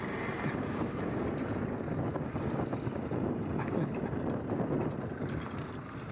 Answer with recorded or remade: recorded